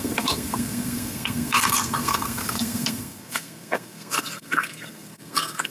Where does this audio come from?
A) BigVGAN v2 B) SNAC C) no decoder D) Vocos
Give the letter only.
B